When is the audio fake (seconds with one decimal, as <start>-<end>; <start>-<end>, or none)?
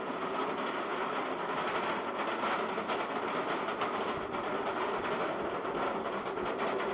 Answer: none